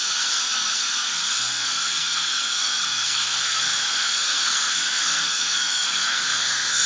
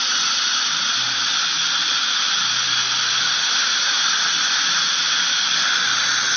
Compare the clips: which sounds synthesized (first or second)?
first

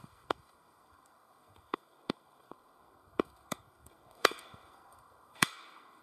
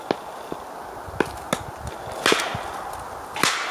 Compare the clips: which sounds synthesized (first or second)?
first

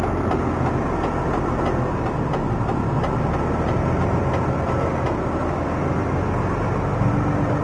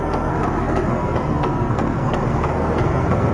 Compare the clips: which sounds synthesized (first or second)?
second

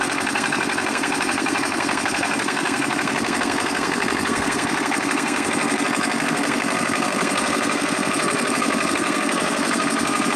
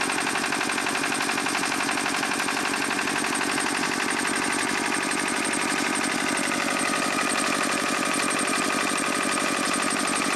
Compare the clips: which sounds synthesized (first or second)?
first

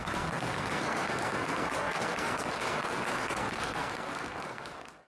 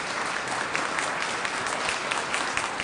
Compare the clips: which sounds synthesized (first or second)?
first